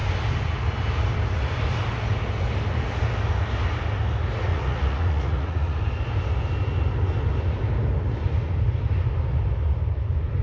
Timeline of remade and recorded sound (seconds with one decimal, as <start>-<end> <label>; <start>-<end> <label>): 0.0-4.5 recorded; 4.5-5.8 remade; 5.8-10.4 recorded